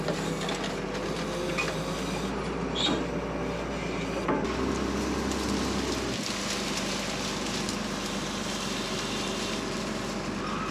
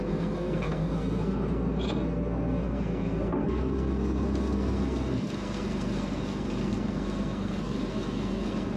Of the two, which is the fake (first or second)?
second